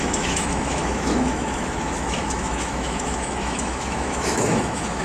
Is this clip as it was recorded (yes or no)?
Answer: no